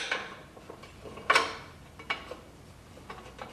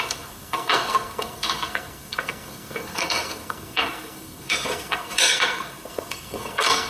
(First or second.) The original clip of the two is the first